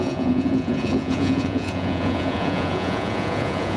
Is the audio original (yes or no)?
no